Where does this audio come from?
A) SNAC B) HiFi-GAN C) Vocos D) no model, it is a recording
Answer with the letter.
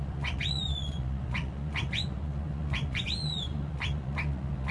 C